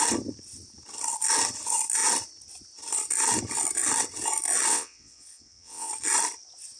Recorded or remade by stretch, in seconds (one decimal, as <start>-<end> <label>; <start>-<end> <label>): 0.0-4.7 recorded; 4.7-5.9 remade; 5.9-6.8 recorded